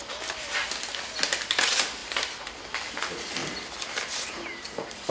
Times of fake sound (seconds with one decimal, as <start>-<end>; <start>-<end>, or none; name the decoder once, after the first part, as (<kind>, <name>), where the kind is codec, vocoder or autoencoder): none